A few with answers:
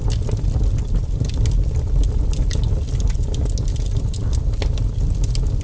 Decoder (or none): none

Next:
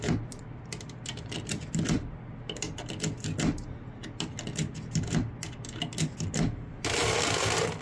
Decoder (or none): none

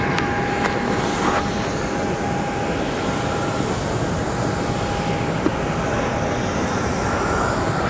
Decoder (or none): none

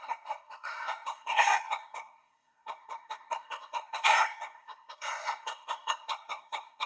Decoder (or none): codec, SNAC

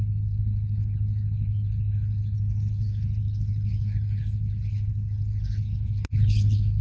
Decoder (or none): codec, HILCodec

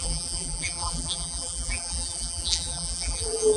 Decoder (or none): vocoder, BigVGAN v2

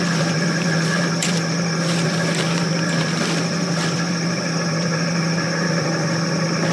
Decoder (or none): vocoder, BigVGAN v2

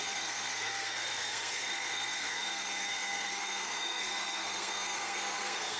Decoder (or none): codec, SNAC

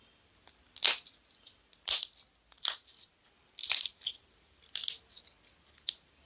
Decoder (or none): none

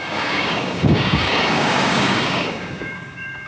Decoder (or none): codec, DAC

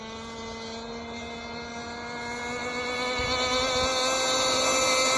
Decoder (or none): none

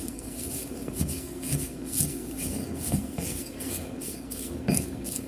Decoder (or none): codec, SNAC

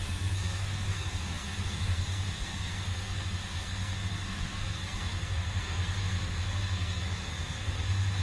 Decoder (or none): codec, SNAC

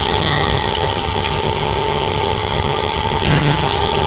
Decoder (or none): vocoder, HiFi-GAN